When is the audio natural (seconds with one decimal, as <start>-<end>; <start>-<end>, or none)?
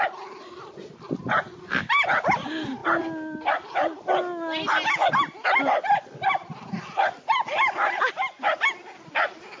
0.0-9.6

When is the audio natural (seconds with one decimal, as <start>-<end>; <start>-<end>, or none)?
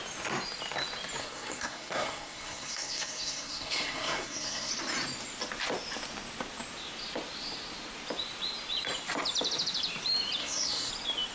0.0-1.2; 4.7-10.4; 10.9-11.3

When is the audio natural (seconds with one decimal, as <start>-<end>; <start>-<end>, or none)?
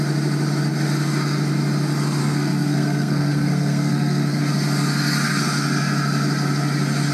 0.0-2.2; 4.4-7.1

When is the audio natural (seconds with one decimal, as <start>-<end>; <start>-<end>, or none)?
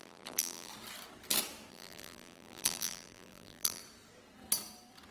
0.7-1.7; 3.8-5.1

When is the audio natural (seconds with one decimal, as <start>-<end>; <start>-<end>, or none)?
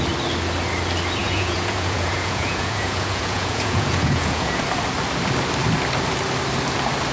0.0-1.2; 4.6-7.1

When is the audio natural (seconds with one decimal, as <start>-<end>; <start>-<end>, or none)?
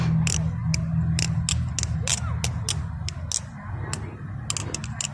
0.0-5.1